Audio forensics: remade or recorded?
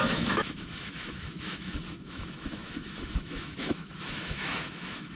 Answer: remade